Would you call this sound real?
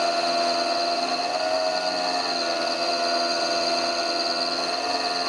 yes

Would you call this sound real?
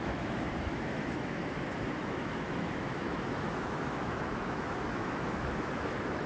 no